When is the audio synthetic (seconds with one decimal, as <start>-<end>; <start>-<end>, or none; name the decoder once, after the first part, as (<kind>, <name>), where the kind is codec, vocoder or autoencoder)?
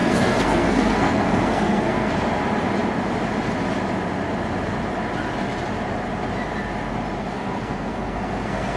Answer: 0.0-2.1 (codec, SNAC); 7.2-8.8